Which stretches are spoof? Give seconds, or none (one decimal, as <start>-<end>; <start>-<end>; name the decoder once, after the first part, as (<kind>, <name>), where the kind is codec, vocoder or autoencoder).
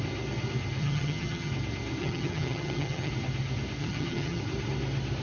0.8-1.5 (vocoder, HiFi-GAN); 2.0-3.1; 3.8-4.4